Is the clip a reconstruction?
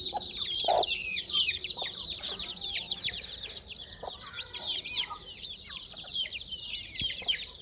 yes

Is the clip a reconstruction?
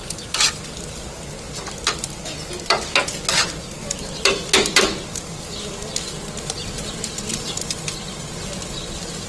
no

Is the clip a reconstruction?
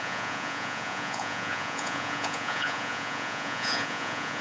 yes